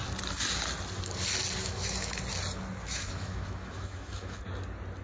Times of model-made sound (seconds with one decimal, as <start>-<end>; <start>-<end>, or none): 1.6-2.2; 2.8-4.4